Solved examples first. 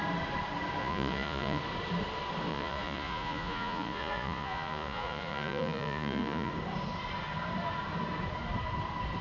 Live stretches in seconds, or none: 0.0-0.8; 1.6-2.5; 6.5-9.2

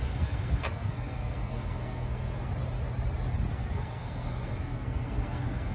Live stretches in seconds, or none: 2.5-3.5

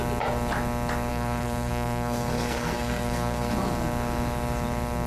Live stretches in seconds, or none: 0.0-1.1; 3.5-5.1

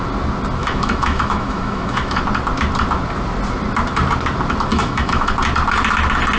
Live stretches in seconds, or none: 0.0-0.6; 2.2-4.7; 5.3-6.4

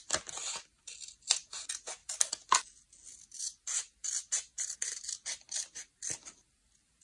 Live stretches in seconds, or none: 0.0-2.0; 2.6-4.9; 5.8-7.0